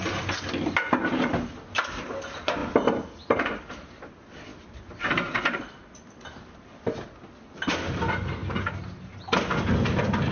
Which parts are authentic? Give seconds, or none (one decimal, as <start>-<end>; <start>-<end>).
0.0-10.3